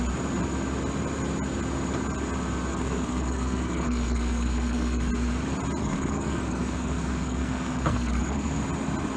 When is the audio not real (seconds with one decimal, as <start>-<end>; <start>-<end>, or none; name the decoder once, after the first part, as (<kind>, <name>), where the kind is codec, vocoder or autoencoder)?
2.7-5.1 (codec, SNAC); 5.8-8.6